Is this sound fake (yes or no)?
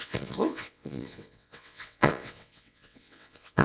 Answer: yes